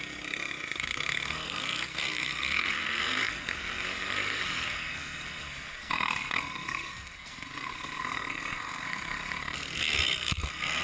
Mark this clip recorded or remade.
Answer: remade